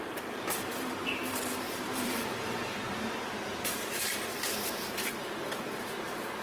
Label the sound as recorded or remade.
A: remade